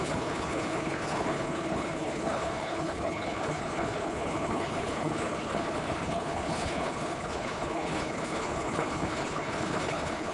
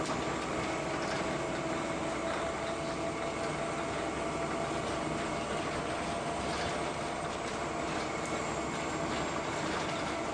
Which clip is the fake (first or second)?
first